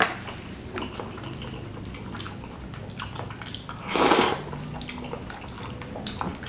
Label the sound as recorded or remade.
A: recorded